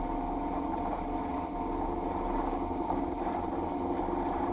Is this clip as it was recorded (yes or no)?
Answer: yes